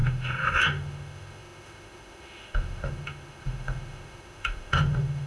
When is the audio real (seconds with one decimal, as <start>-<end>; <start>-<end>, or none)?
none